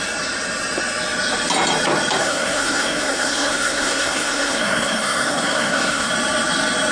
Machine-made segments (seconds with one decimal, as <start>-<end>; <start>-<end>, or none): 2.2-6.1